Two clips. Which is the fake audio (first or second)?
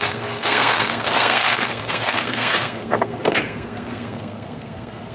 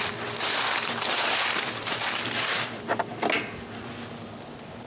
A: first